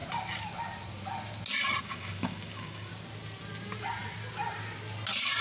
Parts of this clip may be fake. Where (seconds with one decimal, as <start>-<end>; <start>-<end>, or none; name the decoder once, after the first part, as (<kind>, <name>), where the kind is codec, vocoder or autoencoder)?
1.8-2.9 (codec, DAC)